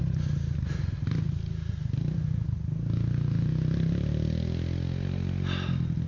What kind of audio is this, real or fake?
real